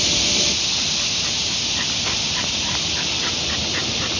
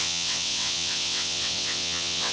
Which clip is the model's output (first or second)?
second